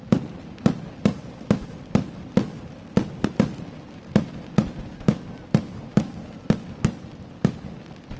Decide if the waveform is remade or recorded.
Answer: recorded